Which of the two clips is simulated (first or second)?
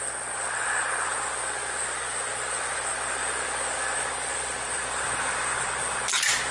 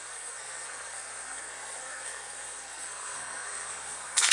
second